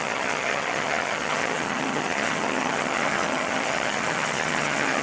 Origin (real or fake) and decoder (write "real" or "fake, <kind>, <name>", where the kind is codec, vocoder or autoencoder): fake, vocoder, HiFi-GAN